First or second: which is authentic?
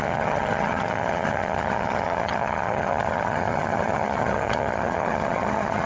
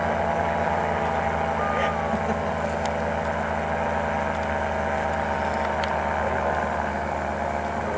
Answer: second